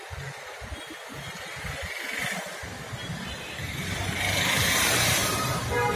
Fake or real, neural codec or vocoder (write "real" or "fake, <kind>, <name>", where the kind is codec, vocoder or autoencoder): real